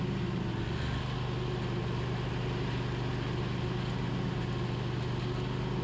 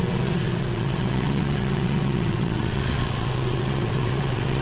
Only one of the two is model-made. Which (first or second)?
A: second